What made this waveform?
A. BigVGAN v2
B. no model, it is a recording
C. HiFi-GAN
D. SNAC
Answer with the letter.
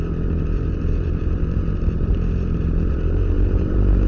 A